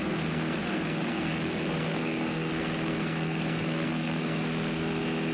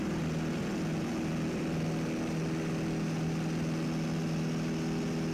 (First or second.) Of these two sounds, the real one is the second